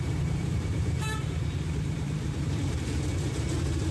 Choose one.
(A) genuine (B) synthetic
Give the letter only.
B